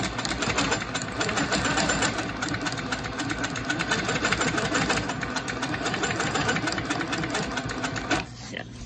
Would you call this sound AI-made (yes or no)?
no